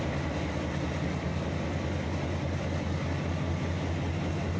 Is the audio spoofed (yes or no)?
no